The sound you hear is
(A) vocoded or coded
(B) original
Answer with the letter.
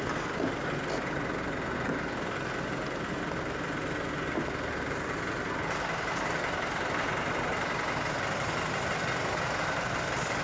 B